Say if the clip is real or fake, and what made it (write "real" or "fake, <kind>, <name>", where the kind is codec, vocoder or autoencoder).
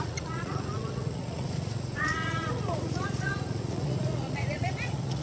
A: fake, vocoder, Vocos